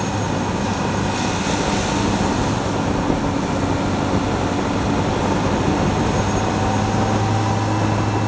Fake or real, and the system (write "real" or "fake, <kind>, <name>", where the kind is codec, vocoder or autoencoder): real